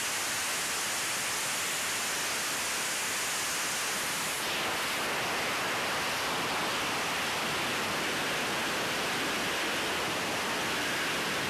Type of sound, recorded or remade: recorded